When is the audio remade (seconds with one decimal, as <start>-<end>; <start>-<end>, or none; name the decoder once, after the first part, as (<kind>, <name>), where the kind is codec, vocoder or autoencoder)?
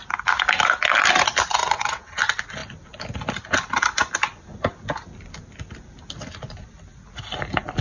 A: 1.6-2.2 (vocoder, WaveNeXt)